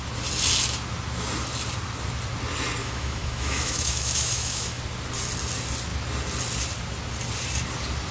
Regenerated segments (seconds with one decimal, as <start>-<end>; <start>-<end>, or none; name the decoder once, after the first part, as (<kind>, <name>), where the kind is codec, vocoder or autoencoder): 2.8-4.8 (autoencoder, DAC-VAE)